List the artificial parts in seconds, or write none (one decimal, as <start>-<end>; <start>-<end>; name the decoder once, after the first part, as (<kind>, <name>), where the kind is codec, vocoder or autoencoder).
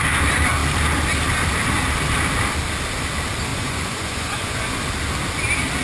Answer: 3.5-4.8 (vocoder, Vocos)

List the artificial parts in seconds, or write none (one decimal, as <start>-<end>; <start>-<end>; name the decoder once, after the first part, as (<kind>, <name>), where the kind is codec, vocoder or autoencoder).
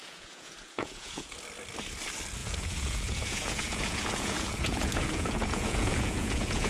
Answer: 0.0-1.3 (vocoder, Vocos); 2.4-6.7